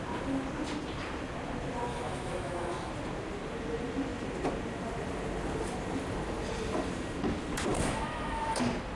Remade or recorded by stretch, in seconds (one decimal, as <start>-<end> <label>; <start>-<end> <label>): 0.0-1.9 recorded; 1.9-2.9 remade; 2.9-7.7 recorded; 7.7-8.6 remade; 8.6-9.0 recorded

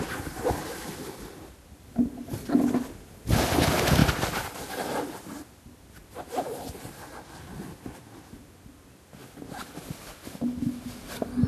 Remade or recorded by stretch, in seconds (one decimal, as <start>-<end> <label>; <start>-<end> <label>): 0.0-11.5 recorded

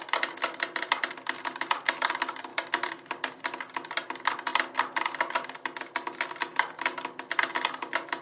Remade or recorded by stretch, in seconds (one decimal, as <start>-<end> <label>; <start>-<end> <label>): 0.0-8.2 recorded

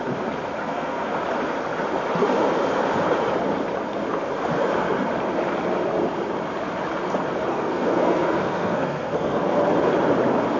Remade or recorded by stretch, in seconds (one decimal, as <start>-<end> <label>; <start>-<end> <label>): 0.0-0.6 recorded; 0.6-1.1 remade; 1.1-7.5 recorded; 7.5-9.4 remade; 9.4-10.6 recorded

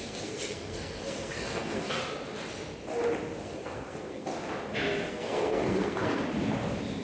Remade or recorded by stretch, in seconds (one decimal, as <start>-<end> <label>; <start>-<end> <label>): 0.0-2.0 remade; 2.0-3.4 recorded; 3.4-4.3 remade; 4.3-5.1 recorded; 5.1-6.2 remade; 6.2-7.0 recorded

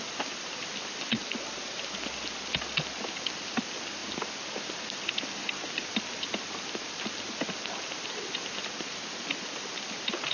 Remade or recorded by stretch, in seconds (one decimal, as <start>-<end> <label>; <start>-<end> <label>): 0.0-10.3 recorded

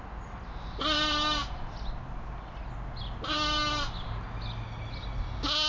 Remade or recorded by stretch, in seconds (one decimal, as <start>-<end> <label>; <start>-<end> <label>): 0.0-5.7 recorded

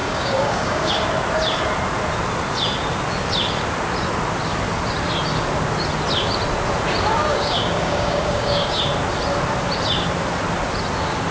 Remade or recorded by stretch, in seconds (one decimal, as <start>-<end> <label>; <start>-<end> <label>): 0.0-0.9 remade; 0.9-7.3 recorded; 7.3-8.8 remade; 8.8-11.3 recorded